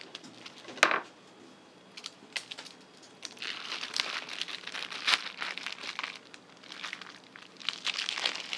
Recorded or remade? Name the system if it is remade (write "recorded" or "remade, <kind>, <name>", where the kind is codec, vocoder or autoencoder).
recorded